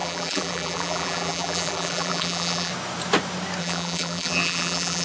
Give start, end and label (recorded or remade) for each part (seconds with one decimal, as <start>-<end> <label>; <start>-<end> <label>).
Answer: 0.0-2.7 remade; 2.7-3.6 recorded; 3.6-5.0 remade